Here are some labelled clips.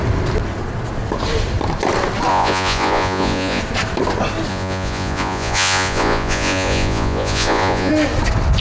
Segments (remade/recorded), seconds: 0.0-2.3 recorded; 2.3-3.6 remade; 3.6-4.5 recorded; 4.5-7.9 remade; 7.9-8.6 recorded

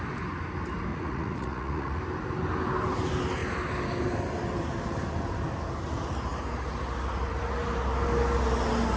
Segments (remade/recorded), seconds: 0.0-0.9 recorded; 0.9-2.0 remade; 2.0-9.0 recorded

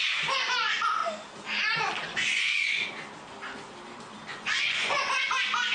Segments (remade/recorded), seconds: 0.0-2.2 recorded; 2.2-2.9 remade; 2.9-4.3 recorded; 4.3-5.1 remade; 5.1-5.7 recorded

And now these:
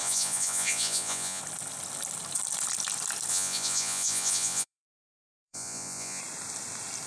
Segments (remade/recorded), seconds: 0.0-1.4 remade; 1.4-3.3 recorded; 3.3-6.2 remade; 6.2-7.1 recorded

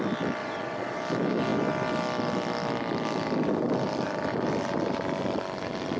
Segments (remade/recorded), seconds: 0.0-0.4 recorded; 0.4-1.0 remade; 1.0-6.0 recorded

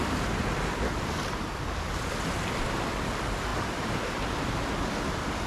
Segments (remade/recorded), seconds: 0.0-5.5 recorded

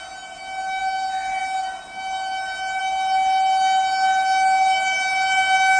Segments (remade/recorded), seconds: 0.0-5.8 recorded

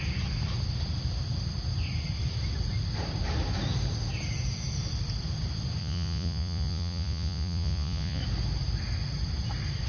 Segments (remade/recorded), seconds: 0.0-5.8 recorded; 5.8-8.2 remade; 8.2-9.9 recorded